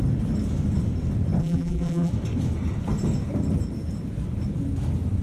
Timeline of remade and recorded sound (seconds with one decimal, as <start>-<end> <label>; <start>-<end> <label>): 0.0-1.4 recorded; 1.4-2.1 remade; 2.1-5.2 recorded